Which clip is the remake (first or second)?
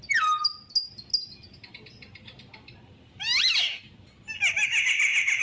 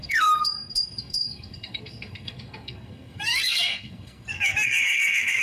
second